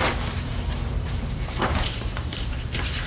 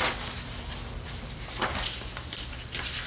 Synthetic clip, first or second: first